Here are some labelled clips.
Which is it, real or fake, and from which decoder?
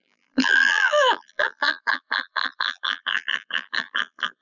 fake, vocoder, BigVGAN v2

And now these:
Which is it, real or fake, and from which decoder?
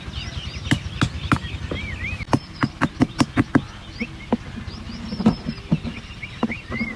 real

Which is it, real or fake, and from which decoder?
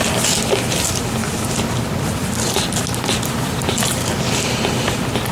real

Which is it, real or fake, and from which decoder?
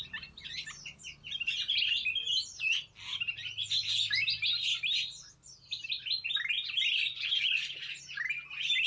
real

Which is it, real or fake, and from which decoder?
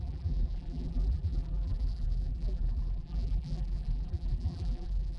fake, vocoder, BigVGAN v2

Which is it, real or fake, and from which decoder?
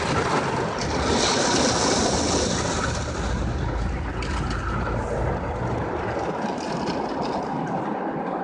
real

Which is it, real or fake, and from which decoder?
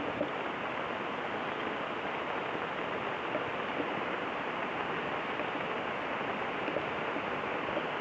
real